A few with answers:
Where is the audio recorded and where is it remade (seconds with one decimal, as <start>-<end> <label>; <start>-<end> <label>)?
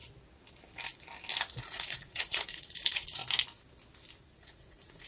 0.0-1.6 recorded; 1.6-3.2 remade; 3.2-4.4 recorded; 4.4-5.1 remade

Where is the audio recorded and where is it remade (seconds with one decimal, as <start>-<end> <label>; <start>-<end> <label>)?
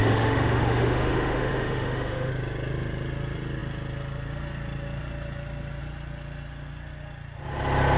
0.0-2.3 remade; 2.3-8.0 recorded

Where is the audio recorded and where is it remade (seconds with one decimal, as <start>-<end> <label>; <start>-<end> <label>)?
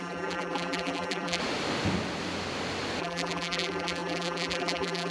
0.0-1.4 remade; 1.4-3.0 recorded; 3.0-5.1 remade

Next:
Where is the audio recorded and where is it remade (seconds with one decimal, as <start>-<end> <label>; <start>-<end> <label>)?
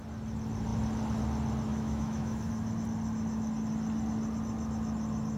0.0-1.7 recorded; 1.7-2.5 remade; 2.5-5.4 recorded